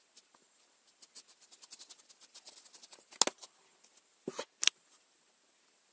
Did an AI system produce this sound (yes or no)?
no